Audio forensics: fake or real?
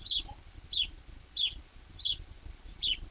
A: real